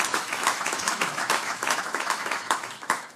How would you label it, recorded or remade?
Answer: remade